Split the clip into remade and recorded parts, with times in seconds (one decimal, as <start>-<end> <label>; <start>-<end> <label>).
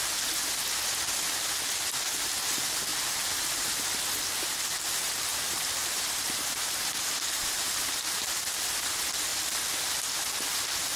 0.0-2.9 recorded; 2.9-3.8 remade; 3.8-5.3 recorded; 5.3-7.7 remade; 7.7-9.3 recorded; 9.3-9.9 remade; 9.9-11.0 recorded